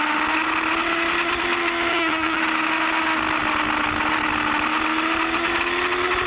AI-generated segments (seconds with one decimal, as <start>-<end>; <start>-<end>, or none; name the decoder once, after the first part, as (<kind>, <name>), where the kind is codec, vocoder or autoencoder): 1.9-2.4 (vocoder, HiFi-GAN)